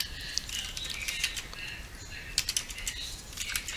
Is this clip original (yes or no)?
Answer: yes